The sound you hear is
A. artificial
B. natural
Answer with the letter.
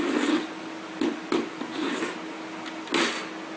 B